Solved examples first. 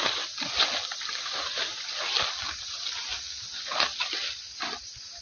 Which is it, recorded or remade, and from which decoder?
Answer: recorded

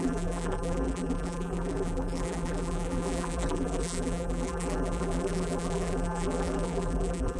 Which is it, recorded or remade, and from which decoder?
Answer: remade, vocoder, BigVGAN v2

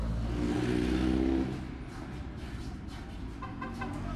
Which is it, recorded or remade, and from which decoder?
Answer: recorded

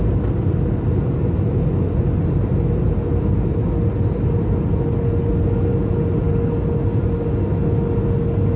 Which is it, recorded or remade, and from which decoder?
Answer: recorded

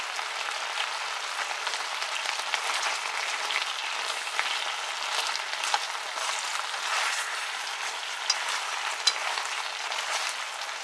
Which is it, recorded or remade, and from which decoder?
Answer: recorded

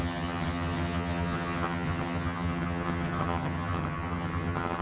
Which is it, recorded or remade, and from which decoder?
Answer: remade, vocoder, HiFi-GAN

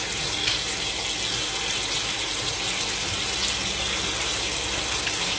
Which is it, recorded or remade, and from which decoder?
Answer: recorded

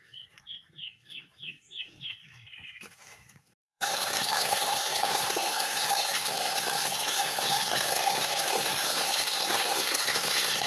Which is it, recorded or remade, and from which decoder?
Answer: remade, codec, SNAC